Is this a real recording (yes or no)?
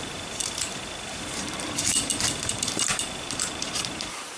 no